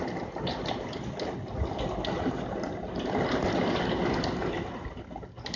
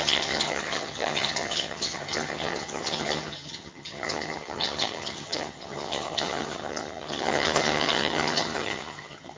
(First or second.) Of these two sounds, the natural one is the first